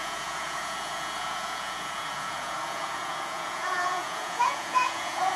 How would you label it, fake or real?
fake